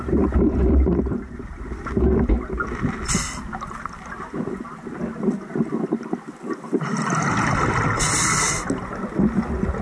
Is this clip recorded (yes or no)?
yes